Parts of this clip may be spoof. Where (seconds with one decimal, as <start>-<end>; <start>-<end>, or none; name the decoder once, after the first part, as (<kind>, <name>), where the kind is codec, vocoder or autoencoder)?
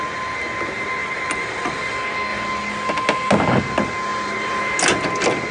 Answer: 1.0-1.9 (vocoder, BigVGAN v2); 4.1-4.6